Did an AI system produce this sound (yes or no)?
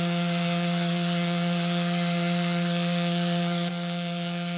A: yes